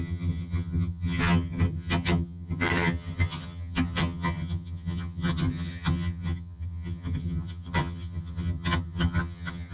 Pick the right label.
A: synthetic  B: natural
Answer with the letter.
A